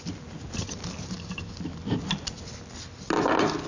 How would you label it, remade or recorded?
recorded